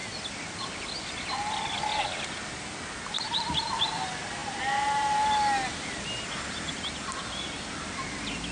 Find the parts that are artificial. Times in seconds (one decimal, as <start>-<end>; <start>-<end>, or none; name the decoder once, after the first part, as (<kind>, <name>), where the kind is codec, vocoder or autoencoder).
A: 2.1-8.5 (vocoder, BigVGAN v2)